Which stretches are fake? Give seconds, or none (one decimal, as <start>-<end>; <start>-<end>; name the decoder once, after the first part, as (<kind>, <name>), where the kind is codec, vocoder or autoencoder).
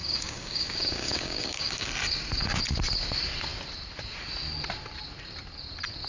0.0-1.9 (codec, DAC)